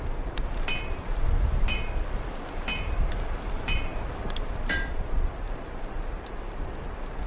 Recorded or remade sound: remade